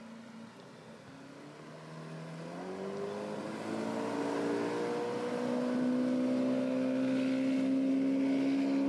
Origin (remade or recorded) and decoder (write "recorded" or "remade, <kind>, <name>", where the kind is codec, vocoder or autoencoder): recorded